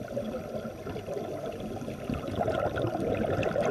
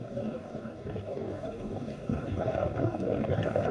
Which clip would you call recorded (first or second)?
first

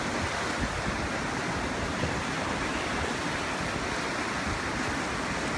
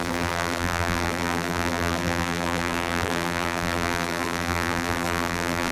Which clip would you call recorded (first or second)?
first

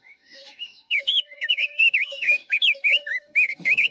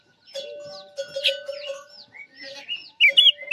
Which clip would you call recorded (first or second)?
second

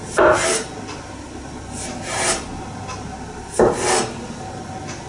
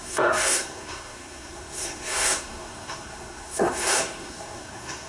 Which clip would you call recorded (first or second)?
first